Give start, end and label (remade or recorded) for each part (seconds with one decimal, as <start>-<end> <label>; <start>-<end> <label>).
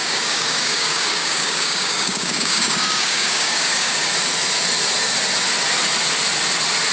0.0-4.1 remade; 4.1-6.9 recorded